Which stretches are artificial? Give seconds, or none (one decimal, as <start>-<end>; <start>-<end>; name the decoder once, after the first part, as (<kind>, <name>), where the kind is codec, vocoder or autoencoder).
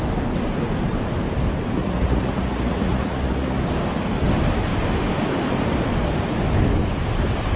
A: 1.8-3.6 (vocoder, Vocos)